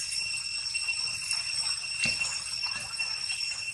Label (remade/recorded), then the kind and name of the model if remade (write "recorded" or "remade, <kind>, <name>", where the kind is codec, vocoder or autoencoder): recorded